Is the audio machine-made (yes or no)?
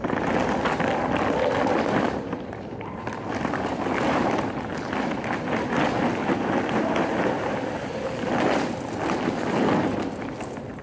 no